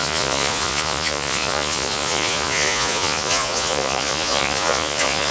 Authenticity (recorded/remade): remade